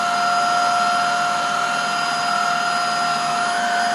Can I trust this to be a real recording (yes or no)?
yes